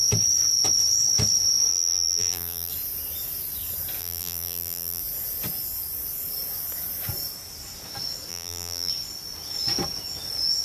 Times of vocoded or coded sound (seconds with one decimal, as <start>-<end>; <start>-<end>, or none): 1.7-2.7; 4.0-5.0; 8.3-8.9

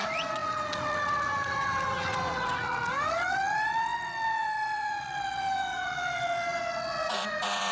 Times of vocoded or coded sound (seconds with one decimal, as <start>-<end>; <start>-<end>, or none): 0.0-7.7

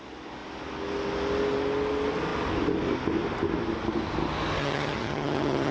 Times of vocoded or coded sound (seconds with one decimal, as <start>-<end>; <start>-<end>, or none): 4.6-5.7